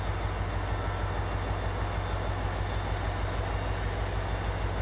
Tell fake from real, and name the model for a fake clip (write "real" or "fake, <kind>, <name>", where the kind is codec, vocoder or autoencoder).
real